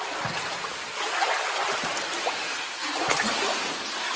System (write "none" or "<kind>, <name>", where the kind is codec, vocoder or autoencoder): none